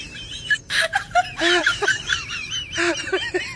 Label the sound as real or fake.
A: fake